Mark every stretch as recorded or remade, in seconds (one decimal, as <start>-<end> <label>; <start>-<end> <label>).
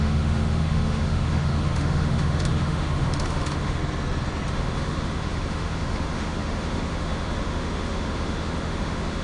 0.0-3.8 remade; 3.8-4.5 recorded; 4.5-9.2 remade